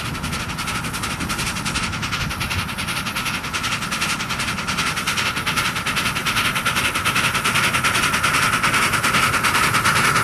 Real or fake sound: real